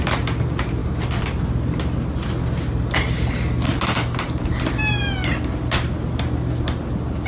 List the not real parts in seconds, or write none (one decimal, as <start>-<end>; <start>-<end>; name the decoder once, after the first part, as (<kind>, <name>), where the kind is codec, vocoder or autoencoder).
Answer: 0.8-1.4 (vocoder, BigVGAN v2)